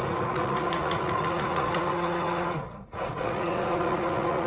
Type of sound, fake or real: fake